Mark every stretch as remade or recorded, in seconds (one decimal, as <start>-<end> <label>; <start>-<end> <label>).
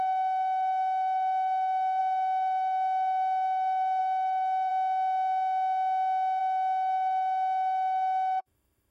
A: 0.0-4.7 remade; 4.7-6.4 recorded; 6.4-8.9 remade